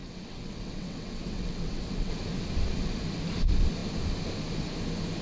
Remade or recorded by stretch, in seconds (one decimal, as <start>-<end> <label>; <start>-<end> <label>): 0.0-2.1 remade; 2.1-5.2 recorded